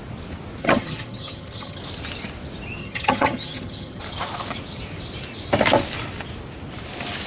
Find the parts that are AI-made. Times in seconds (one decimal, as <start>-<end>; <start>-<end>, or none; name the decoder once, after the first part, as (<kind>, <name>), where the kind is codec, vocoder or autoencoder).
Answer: 0.6-1.8 (vocoder, HiFi-GAN); 2.8-4.0